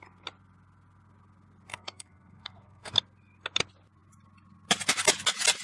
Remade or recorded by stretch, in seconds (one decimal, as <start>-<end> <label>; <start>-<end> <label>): 0.0-1.7 recorded; 1.7-2.9 remade; 2.9-5.6 recorded